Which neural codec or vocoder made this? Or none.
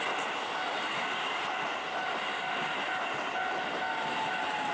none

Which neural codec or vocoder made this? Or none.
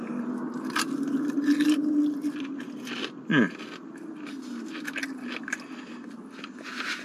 none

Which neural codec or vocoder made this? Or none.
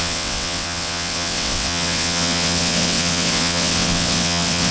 vocoder, WaveNeXt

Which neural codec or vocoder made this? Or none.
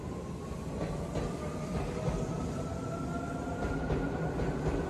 none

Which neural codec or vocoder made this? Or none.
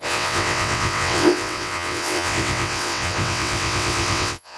vocoder, WaveNeXt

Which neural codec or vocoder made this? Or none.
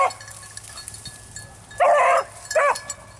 none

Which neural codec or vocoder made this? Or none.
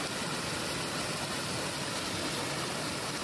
none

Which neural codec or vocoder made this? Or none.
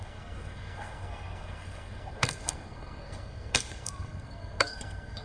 codec, SNAC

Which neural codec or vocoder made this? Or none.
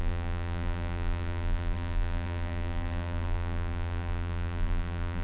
vocoder, BigVGAN v2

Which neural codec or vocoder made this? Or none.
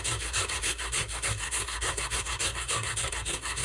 codec, SNAC